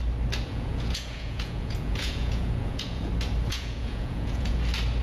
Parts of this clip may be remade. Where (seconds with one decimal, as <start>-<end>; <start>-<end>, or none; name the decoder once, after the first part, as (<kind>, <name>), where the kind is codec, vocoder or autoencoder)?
0.5-3.1 (vocoder, Vocos); 3.5-4.6